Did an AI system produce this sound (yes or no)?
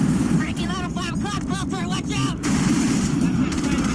yes